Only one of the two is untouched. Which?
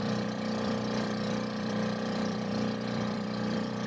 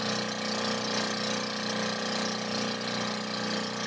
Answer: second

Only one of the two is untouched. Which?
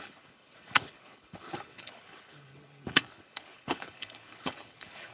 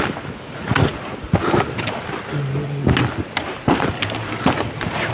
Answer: second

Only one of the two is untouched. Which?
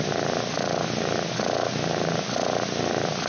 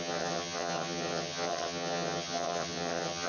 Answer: first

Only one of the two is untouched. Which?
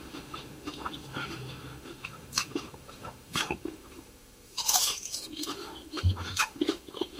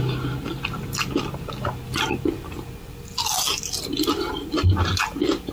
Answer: second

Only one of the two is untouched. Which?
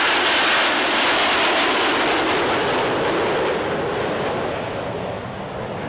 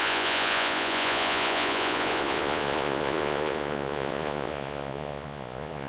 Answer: first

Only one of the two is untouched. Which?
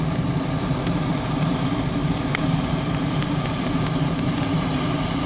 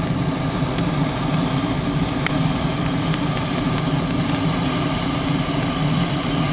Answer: second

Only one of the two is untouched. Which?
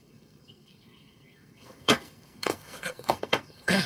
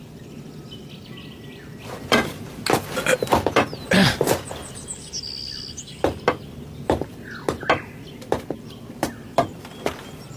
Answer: second